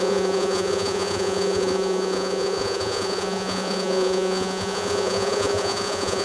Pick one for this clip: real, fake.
fake